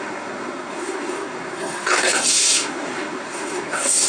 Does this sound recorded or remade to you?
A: remade